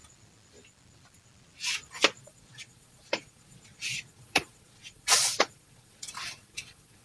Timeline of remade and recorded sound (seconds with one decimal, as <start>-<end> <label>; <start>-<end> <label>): 0.0-2.2 recorded; 2.2-7.0 remade